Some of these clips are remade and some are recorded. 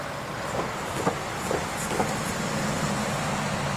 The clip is recorded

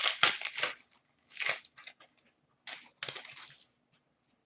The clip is recorded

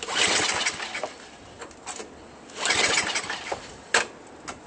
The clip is recorded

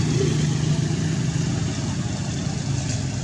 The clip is recorded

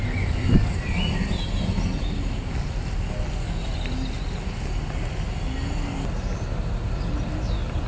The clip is recorded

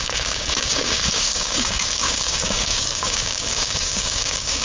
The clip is remade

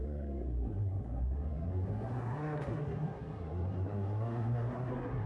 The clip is remade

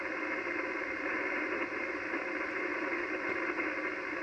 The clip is recorded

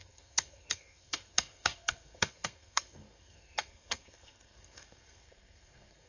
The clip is remade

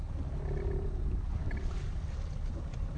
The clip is recorded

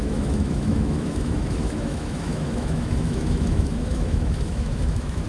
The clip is remade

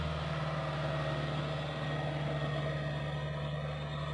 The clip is recorded